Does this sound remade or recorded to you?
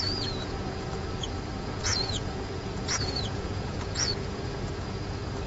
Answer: remade